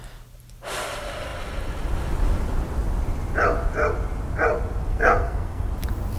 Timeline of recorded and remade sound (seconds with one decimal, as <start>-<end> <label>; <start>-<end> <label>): 0.0-4.9 recorded; 4.9-5.7 remade; 5.7-6.2 recorded